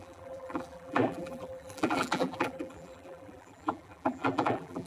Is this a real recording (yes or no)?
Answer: no